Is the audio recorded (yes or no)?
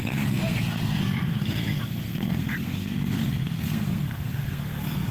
no